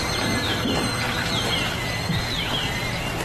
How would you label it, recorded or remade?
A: recorded